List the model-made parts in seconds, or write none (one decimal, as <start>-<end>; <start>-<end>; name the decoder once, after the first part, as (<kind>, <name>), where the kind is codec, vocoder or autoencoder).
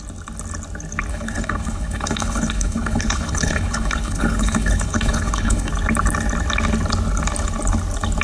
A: 1.1-5.7 (codec, HILCodec)